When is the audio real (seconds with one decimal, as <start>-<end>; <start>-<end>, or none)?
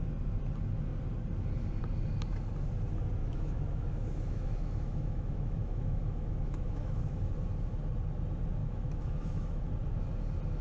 0.0-3.2; 7.3-8.6; 9.7-10.6